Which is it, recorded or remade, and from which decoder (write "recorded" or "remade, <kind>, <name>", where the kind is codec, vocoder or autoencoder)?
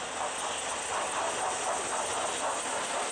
recorded